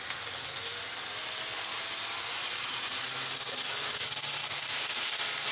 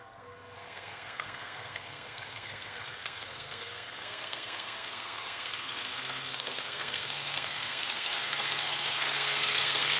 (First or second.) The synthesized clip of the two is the second